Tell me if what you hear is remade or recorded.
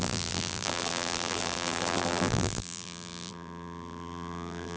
remade